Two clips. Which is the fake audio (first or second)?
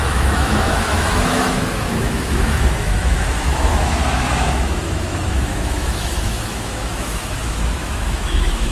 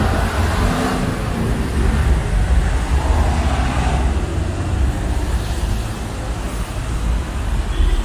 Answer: first